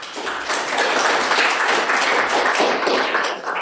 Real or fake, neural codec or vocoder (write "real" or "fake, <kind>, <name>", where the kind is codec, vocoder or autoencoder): real